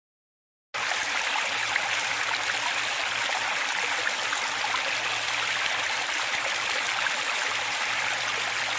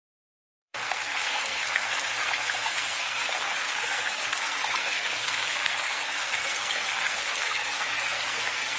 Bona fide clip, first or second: first